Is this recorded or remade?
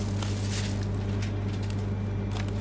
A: recorded